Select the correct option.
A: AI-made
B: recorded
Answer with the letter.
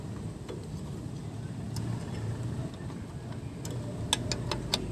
B